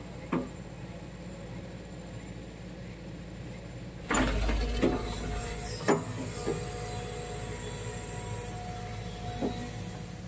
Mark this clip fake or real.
real